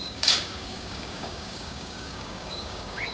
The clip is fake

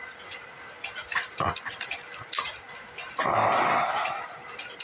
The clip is real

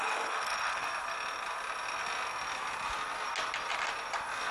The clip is real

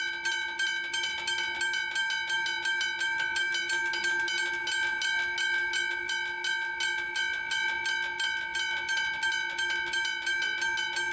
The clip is real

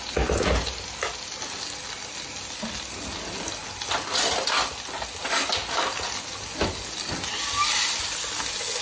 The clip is real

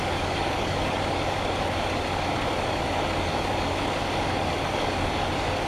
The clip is fake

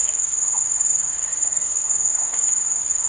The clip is fake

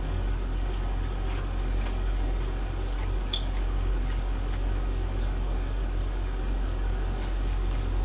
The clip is fake